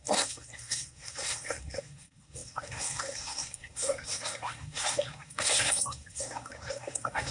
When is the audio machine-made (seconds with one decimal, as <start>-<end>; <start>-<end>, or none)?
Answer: 0.0-7.3